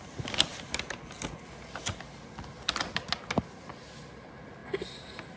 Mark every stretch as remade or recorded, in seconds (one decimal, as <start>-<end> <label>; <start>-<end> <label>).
0.0-5.4 recorded